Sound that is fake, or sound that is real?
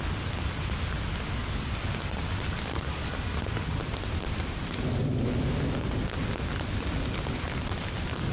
real